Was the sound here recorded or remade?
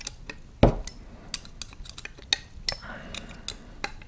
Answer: recorded